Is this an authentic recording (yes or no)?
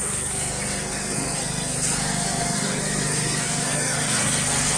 no